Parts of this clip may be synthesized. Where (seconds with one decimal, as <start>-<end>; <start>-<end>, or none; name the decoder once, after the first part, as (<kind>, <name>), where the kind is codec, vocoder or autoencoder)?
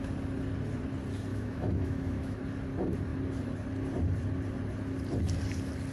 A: 1.3-2.4 (autoencoder, DAC-VAE)